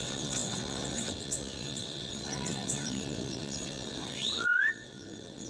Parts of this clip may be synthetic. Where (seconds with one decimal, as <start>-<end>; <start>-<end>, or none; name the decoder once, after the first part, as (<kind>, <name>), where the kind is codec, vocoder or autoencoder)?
0.0-5.5 (vocoder, WaveNeXt)